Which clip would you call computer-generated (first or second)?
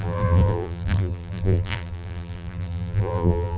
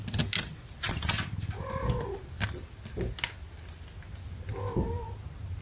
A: first